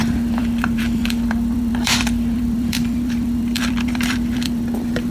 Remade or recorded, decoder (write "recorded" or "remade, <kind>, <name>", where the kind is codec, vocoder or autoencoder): remade, vocoder, BigVGAN v2